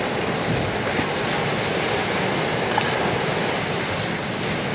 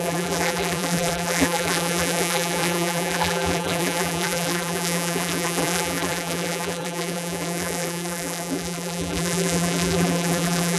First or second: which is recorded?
first